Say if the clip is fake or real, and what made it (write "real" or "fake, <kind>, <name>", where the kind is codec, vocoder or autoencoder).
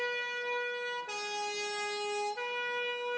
real